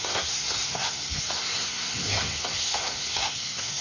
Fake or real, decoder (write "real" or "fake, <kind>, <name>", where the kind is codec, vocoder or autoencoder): fake, codec, SNAC